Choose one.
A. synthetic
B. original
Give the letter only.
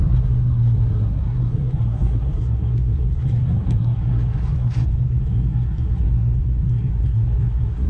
A